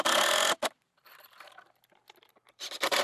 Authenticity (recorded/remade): remade